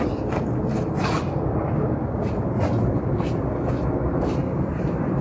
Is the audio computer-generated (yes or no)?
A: no